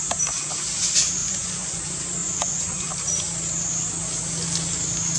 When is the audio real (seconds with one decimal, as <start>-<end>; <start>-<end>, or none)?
0.0-1.2; 1.8-2.2; 2.9-5.2